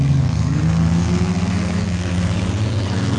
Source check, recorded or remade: remade